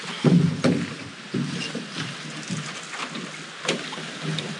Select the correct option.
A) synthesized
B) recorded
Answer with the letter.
B